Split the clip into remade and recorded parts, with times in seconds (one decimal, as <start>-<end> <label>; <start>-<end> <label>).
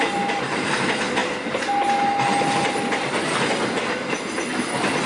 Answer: 0.0-5.1 recorded